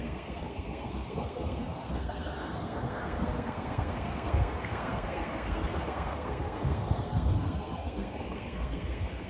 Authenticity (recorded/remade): remade